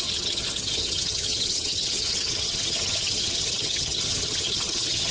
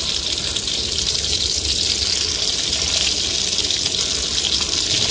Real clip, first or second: second